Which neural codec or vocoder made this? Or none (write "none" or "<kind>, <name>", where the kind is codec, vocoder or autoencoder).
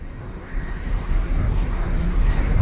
codec, SNAC